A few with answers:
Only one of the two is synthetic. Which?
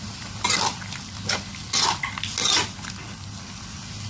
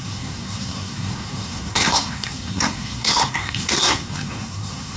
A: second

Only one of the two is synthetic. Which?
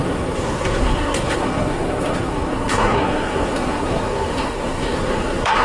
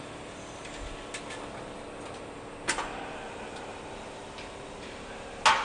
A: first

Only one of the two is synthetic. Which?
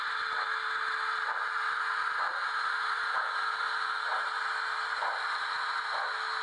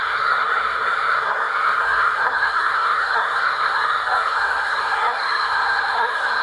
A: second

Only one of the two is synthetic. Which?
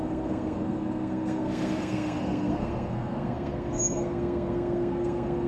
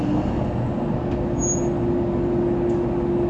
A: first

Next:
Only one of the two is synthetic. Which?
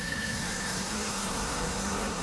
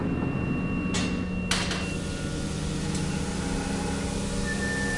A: first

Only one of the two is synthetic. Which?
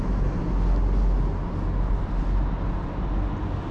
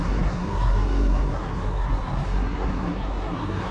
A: second